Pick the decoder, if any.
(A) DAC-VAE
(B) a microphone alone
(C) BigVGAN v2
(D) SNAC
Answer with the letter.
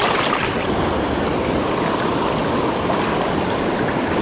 C